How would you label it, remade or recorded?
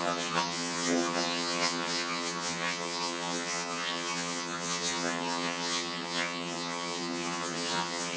remade